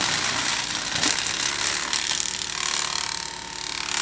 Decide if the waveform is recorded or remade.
recorded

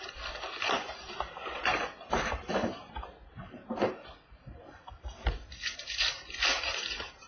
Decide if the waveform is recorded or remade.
remade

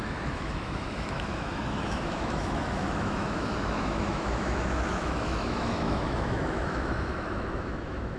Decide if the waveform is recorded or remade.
remade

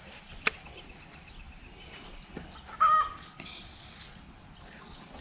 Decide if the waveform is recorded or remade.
recorded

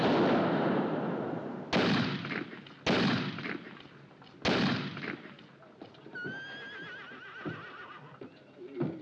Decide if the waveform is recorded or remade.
recorded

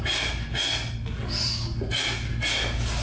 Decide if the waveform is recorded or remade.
recorded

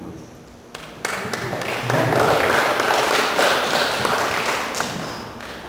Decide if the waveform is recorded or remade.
recorded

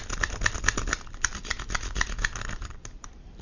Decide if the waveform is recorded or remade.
recorded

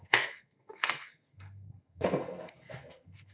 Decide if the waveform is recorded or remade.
remade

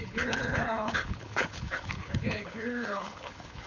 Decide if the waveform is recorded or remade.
remade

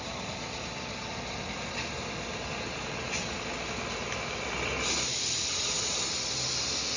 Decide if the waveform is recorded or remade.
recorded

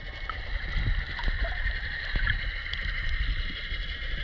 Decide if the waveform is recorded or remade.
recorded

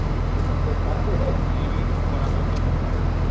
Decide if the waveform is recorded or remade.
recorded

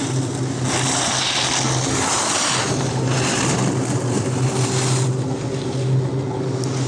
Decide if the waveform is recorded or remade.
recorded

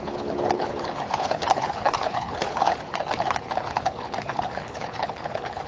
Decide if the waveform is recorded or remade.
remade